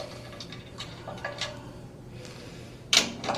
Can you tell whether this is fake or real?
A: fake